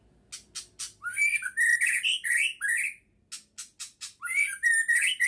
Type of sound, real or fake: real